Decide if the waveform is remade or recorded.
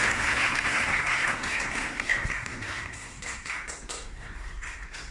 remade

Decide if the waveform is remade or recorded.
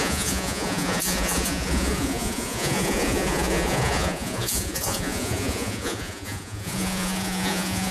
remade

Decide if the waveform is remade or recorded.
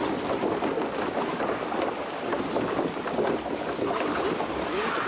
recorded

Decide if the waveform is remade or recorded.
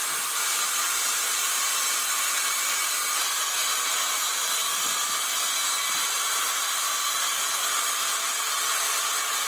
recorded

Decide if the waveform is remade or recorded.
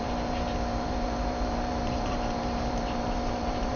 remade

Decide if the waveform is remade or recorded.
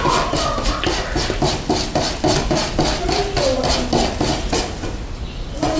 recorded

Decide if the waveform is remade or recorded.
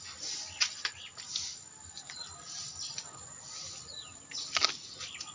recorded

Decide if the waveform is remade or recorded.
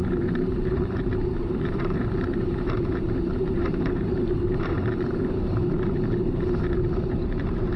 remade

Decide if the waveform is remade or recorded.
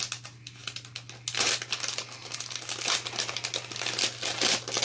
recorded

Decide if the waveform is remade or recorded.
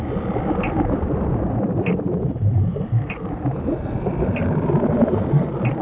recorded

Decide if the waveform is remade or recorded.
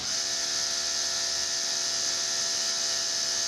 recorded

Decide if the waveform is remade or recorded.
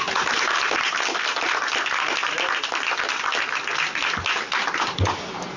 recorded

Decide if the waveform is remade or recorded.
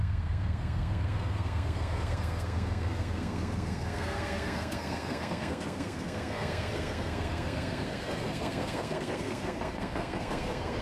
remade